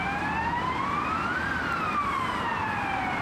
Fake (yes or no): no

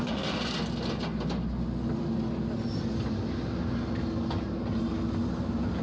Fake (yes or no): no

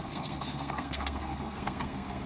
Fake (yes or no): yes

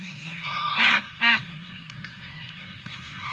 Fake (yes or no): yes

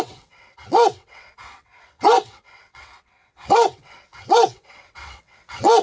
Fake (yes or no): yes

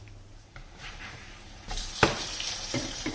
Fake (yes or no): yes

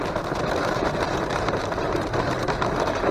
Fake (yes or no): yes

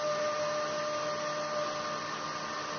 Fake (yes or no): no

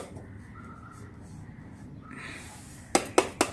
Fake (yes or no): no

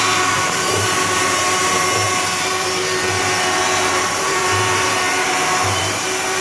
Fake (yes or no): yes